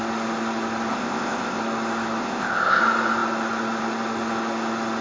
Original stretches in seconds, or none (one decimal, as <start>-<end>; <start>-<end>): 0.0-0.9; 1.6-2.2; 2.8-5.0